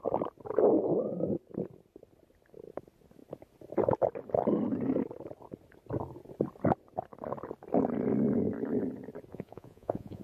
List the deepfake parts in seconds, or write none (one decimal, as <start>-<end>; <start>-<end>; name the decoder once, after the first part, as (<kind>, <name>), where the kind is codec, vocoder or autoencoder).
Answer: 9.3-10.2 (vocoder, Vocos)